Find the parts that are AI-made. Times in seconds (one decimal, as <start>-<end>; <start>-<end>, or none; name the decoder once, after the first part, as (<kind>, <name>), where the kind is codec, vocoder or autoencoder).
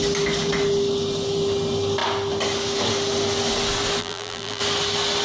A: 4.0-4.6 (vocoder, BigVGAN v2)